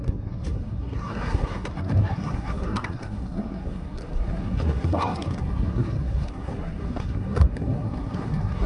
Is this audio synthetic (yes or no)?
yes